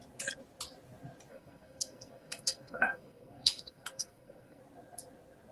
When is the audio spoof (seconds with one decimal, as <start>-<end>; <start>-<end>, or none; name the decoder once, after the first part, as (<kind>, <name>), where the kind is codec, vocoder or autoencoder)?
1.3-4.6 (codec, SNAC)